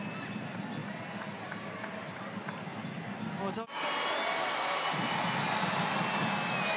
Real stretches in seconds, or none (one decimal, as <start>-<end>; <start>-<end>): 0.0-6.8